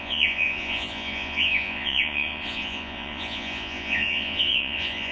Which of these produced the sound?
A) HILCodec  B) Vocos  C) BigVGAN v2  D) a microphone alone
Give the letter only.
B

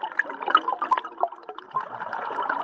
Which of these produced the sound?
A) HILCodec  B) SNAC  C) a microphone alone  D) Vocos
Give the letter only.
C